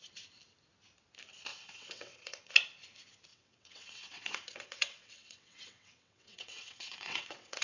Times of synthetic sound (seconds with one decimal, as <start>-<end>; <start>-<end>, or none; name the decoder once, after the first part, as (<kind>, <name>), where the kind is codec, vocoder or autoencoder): 1.5-2.5 (vocoder, WaveNeXt); 3.3-7.6

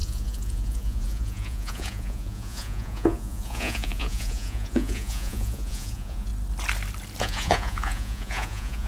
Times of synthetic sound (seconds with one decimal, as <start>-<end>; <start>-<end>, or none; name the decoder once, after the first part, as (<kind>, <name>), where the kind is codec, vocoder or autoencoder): 0.0-6.3 (vocoder, Vocos); 7.2-8.9

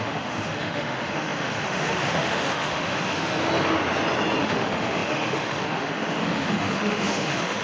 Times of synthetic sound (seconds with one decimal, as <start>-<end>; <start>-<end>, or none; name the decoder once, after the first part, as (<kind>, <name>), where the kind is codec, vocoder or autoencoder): 0.0-3.4 (autoencoder, DAC-VAE); 4.4-7.6

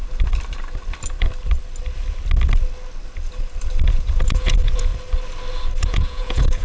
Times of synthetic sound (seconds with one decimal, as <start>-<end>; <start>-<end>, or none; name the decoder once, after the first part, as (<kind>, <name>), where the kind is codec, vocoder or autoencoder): 3.9-4.9 (vocoder, Vocos); 5.8-6.6

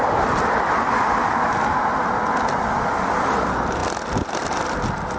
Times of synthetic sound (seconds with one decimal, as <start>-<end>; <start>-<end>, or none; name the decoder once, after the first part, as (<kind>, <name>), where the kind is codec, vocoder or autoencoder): none

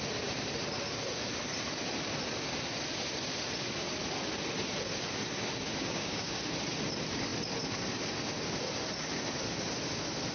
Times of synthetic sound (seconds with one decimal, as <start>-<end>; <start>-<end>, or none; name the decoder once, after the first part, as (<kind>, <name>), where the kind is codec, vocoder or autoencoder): 5.8-6.4 (codec, DAC)